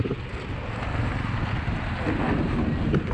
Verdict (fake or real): real